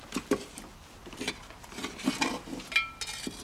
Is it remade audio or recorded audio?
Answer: recorded